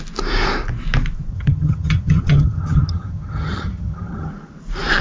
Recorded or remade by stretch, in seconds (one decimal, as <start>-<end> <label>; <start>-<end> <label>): 0.0-1.3 recorded; 1.3-4.3 remade; 4.3-5.0 recorded